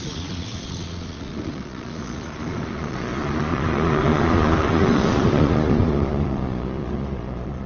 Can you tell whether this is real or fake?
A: fake